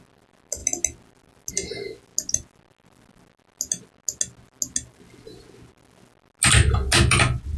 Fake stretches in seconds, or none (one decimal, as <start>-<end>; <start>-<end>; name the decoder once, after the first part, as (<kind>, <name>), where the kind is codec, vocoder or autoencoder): none